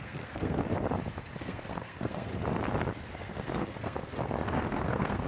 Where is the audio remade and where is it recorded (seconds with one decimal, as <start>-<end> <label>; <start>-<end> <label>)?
0.0-0.7 remade; 0.7-1.4 recorded; 1.4-2.3 remade; 2.3-3.1 recorded; 3.1-5.3 remade

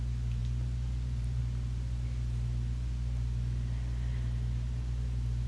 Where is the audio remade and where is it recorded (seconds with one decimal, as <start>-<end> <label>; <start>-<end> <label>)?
0.0-0.4 recorded; 0.4-1.4 remade; 1.4-5.5 recorded

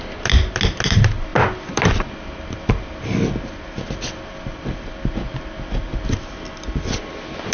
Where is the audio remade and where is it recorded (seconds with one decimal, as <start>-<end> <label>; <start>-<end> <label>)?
0.0-7.5 recorded